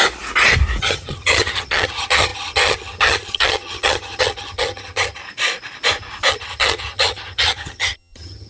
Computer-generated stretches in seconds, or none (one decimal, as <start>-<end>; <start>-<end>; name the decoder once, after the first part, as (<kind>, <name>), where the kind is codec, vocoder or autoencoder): 0.8-5.2 (vocoder, HiFi-GAN); 6.3-8.5